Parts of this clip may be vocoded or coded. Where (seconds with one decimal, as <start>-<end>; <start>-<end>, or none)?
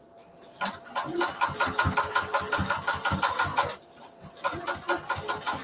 none